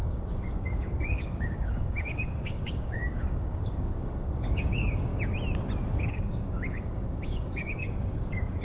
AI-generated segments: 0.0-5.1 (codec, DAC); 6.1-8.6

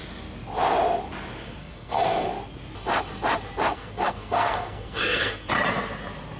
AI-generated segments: 1.6-2.3 (codec, SNAC); 3.7-5.5